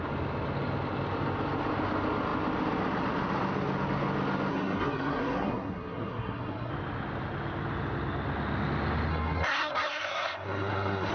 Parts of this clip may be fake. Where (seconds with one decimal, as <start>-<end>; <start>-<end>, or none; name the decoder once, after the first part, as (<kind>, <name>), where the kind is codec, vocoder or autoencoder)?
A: 4.5-6.7 (codec, SNAC); 9.1-11.1

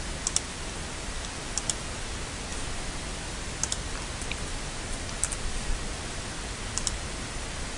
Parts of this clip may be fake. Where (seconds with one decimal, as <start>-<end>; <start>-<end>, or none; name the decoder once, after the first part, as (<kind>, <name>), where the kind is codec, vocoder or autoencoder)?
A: none

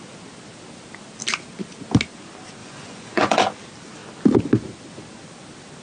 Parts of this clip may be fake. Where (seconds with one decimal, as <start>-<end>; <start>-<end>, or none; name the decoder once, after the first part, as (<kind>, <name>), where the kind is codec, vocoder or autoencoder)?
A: 2.6-3.4 (vocoder, Vocos)

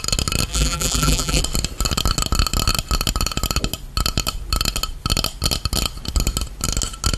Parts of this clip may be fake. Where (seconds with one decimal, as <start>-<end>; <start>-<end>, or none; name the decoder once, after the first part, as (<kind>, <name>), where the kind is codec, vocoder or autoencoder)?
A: 0.5-1.4 (vocoder, BigVGAN v2)

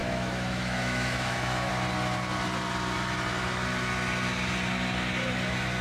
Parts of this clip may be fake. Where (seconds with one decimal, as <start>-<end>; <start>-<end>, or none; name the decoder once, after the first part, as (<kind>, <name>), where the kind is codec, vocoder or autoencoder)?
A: 0.0-1.7 (autoencoder, DAC-VAE)